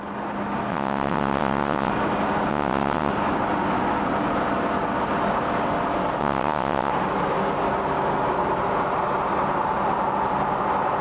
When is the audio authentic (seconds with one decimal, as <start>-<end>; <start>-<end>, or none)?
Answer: 0.0-0.7; 1.9-2.5; 3.1-6.2; 6.9-11.0